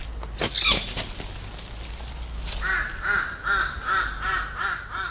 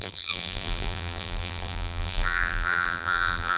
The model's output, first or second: second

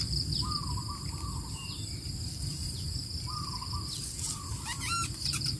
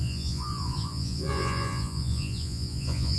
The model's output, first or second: second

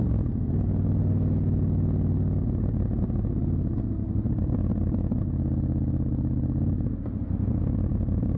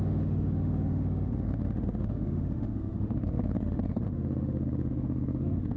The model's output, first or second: second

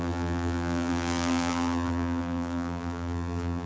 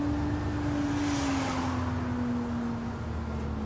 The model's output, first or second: first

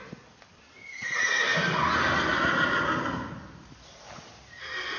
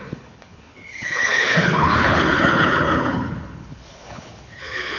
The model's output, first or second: second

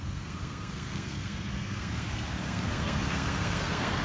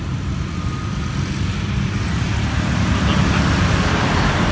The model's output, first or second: first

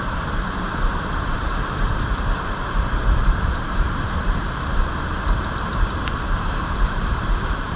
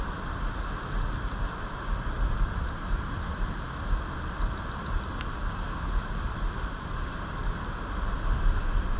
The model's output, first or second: first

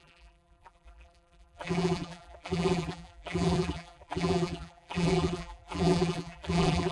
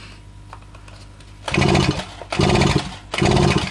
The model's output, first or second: first